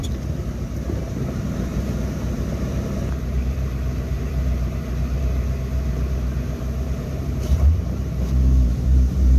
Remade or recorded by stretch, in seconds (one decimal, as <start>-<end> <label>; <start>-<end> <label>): 0.0-9.4 remade